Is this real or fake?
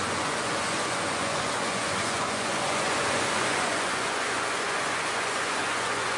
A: fake